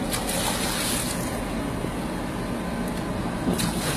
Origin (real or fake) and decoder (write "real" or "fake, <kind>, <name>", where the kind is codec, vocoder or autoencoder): real